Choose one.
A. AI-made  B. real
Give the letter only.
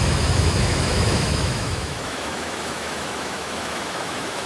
A